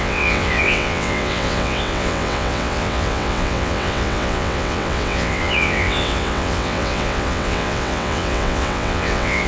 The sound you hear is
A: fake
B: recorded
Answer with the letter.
A